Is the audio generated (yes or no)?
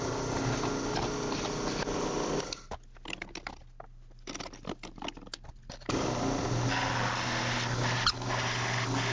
no